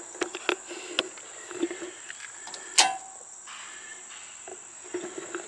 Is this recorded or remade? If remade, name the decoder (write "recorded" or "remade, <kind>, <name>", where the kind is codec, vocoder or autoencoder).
recorded